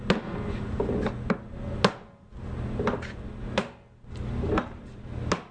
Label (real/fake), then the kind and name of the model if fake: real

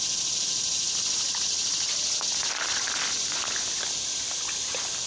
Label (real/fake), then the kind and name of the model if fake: real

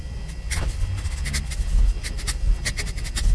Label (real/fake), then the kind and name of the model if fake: real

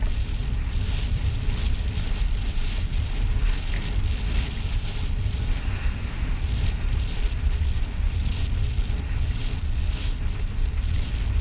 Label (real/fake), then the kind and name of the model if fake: real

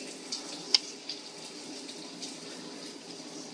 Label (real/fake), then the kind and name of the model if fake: real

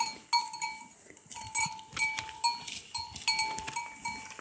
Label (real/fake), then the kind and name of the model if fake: real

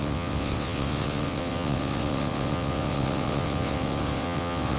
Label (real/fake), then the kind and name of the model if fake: fake, vocoder, WaveNeXt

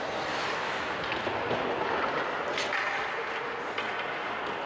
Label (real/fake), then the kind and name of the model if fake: real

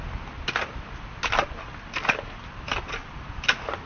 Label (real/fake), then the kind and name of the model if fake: real